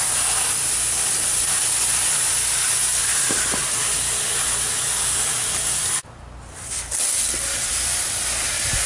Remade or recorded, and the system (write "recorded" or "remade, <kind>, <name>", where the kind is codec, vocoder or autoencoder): recorded